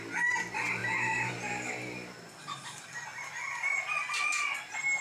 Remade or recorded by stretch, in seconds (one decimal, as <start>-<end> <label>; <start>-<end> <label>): 0.0-5.0 recorded